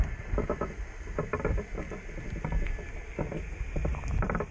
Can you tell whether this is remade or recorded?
recorded